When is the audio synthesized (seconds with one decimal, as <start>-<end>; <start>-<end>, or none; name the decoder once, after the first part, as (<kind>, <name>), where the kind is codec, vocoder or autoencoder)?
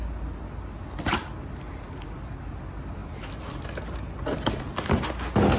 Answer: none